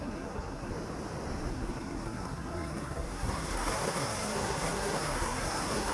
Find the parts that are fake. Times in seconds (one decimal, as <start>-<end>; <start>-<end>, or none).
0.0-0.7; 1.5-5.9